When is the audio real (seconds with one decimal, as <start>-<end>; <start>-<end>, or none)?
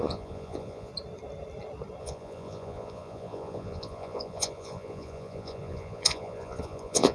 0.9-2.0